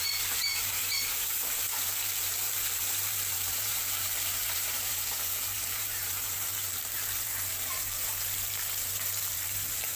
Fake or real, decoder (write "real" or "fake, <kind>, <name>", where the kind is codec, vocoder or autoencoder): fake, vocoder, BigVGAN v2